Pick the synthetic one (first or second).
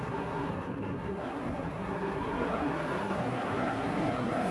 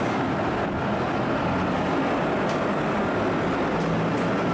first